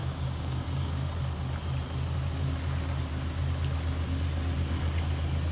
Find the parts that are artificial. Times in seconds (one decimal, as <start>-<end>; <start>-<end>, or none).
0.0-1.1